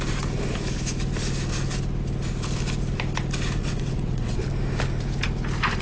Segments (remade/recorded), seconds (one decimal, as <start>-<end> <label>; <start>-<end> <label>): 0.0-3.6 recorded; 3.6-4.4 remade; 4.4-5.8 recorded